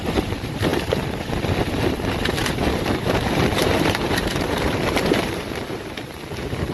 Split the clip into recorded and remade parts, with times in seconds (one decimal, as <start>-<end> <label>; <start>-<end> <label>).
0.0-2.4 recorded; 2.4-5.8 remade; 5.8-6.7 recorded